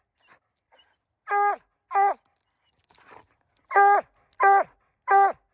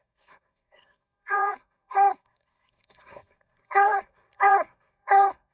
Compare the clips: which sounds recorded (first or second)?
first